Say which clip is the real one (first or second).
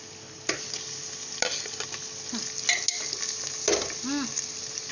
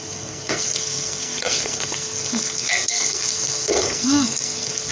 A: first